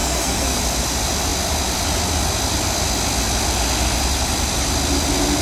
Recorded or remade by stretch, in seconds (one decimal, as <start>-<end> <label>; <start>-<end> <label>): 0.0-0.6 remade; 0.6-5.4 recorded